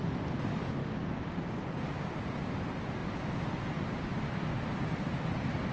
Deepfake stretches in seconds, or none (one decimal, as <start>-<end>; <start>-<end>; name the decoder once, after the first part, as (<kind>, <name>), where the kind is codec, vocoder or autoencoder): 0.8-1.6 (codec, DAC)